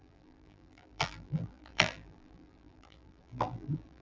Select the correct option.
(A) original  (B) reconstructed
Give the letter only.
B